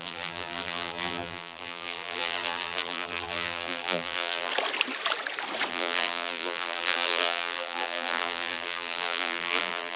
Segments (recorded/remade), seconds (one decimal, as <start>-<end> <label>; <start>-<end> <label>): 0.0-4.5 remade; 4.5-5.7 recorded; 5.7-10.0 remade